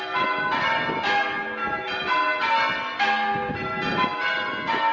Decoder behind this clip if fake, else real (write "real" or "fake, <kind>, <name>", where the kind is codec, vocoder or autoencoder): real